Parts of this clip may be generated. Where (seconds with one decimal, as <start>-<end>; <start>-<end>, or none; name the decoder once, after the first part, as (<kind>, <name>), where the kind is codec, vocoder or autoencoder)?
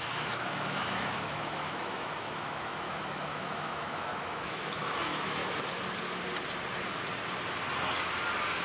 0.0-5.4 (autoencoder, DAC-VAE)